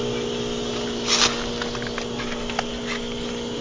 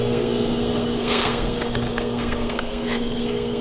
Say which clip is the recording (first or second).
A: first